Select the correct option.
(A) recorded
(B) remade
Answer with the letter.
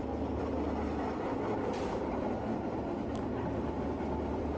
B